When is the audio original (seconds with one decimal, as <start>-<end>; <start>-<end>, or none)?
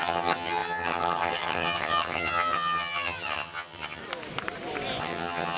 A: 4.0-5.0